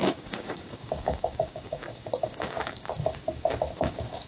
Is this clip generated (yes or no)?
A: yes